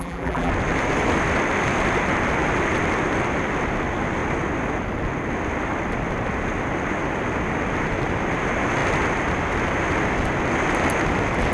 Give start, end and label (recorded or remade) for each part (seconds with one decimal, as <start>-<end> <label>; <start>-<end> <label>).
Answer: 0.0-0.5 remade; 0.5-11.5 recorded